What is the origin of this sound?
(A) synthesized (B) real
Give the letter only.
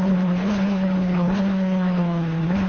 A